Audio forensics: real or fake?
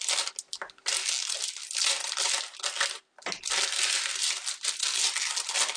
real